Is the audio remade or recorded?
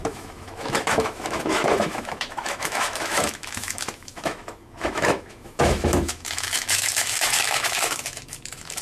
remade